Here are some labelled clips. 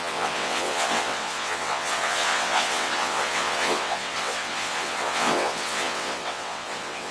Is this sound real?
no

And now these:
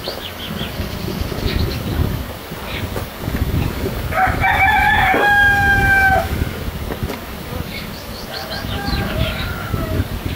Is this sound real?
no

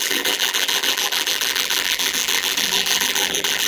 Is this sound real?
no